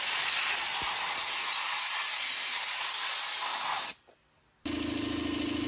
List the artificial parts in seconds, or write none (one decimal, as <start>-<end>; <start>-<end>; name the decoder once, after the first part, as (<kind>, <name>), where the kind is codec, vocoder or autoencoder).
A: none